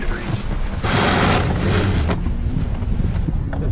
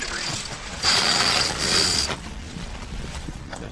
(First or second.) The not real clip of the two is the second